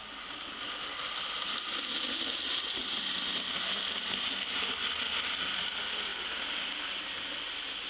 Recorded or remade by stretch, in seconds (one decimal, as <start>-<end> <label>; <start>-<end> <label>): 0.0-7.9 recorded